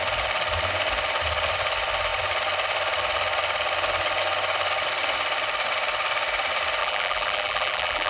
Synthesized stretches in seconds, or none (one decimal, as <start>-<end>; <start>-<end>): 6.8-8.1